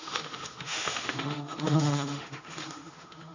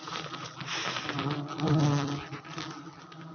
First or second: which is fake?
first